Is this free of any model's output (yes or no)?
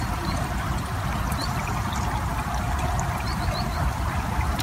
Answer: yes